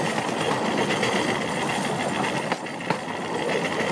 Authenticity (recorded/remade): recorded